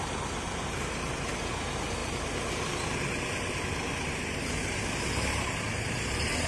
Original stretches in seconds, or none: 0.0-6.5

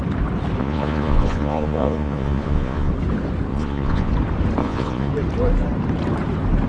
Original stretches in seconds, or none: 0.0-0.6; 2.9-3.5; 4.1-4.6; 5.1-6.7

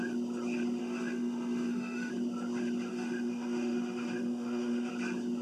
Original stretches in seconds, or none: 0.0-0.8; 2.1-2.9; 4.9-5.4

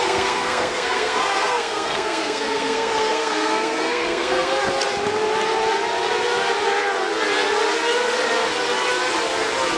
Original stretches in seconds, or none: 4.6-9.8

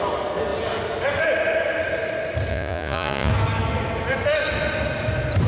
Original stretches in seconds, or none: 0.0-2.5; 3.3-5.5